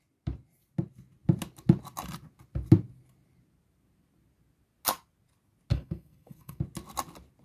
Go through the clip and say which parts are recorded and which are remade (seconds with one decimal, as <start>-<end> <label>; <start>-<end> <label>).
0.0-5.7 recorded; 5.7-6.6 remade; 6.6-7.4 recorded